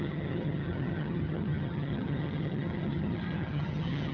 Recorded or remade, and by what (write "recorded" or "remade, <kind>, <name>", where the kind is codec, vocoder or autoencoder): remade, vocoder, HiFi-GAN